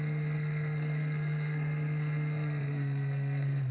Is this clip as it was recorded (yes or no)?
no